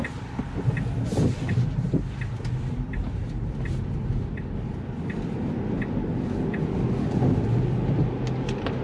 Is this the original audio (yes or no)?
yes